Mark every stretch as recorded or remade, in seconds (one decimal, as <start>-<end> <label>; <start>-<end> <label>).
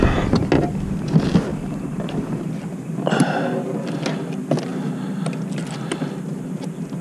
0.0-1.5 recorded; 1.5-2.5 remade; 2.5-7.0 recorded